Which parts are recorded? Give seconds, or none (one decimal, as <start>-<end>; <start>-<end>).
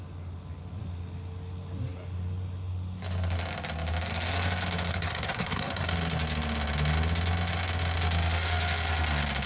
0.0-4.9; 5.9-9.5